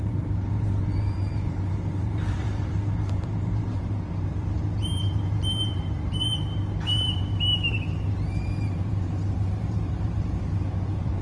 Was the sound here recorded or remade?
remade